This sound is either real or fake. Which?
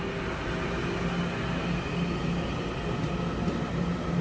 real